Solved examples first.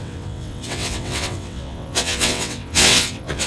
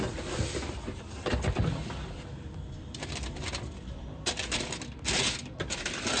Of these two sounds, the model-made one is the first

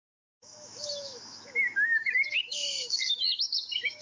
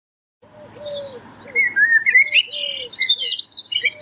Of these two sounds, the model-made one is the first